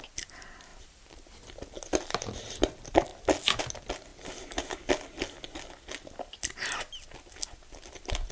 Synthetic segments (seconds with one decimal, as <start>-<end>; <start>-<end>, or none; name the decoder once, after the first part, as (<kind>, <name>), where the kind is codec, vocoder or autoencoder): none